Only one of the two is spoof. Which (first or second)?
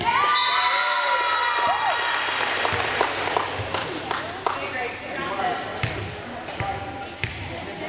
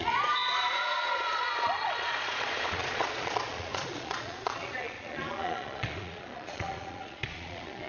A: second